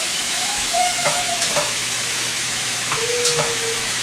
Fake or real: fake